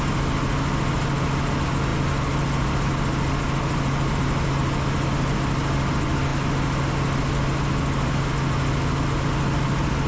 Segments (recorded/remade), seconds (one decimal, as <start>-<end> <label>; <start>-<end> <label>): 0.0-10.1 recorded